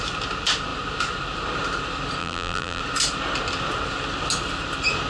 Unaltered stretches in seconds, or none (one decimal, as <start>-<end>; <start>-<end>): 0.0-2.2; 2.8-5.1